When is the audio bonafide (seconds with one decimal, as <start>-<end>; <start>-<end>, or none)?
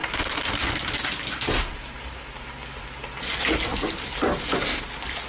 0.0-5.3